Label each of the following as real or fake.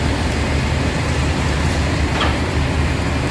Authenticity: fake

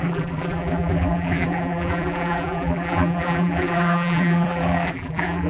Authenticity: fake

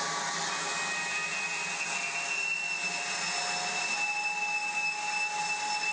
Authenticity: real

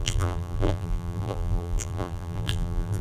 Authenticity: fake